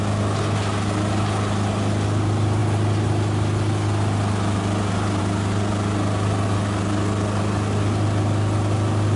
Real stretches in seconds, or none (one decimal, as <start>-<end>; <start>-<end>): 0.0-9.2